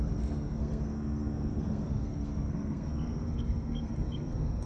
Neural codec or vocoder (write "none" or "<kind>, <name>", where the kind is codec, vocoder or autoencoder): codec, SNAC